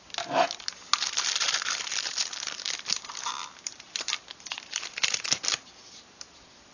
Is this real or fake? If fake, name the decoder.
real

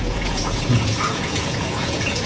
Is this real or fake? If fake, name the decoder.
fake, vocoder, Vocos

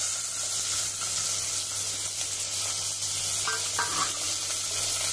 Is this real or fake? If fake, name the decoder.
real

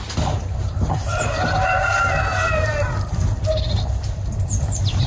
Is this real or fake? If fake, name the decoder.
fake, vocoder, BigVGAN v2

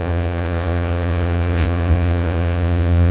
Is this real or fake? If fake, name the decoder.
fake, vocoder, Vocos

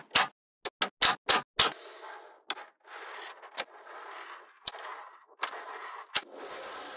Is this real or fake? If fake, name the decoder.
real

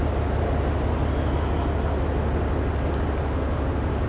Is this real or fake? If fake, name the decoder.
real